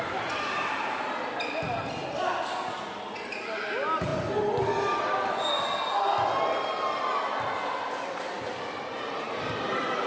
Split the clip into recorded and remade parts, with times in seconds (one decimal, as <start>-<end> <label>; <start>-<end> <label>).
0.0-10.1 recorded